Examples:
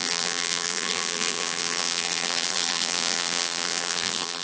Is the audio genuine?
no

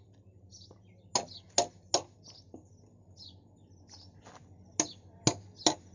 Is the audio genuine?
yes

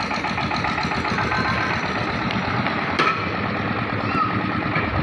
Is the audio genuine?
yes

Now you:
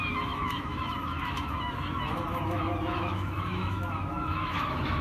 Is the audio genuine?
no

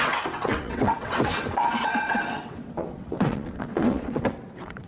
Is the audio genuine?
no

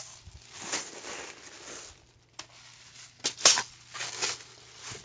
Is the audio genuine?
yes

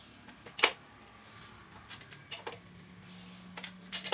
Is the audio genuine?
yes